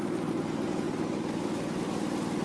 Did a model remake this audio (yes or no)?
no